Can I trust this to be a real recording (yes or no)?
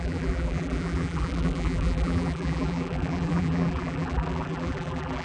no